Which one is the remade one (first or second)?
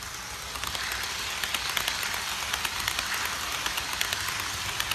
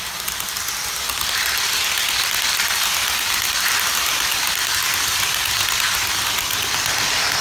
second